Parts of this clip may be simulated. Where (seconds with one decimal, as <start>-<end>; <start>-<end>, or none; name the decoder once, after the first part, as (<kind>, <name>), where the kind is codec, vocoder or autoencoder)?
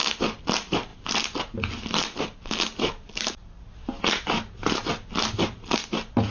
none